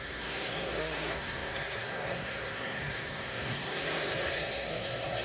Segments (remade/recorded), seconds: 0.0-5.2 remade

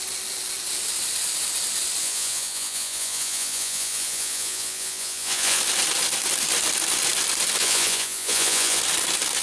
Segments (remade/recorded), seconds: 0.0-2.0 recorded; 2.0-5.6 remade; 5.6-7.6 recorded; 7.6-8.8 remade; 8.8-9.4 recorded